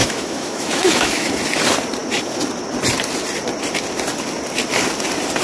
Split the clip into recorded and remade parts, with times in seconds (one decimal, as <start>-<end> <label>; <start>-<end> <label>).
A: 0.0-1.3 remade; 1.3-5.4 recorded